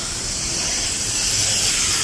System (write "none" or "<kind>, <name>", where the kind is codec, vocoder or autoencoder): vocoder, BigVGAN v2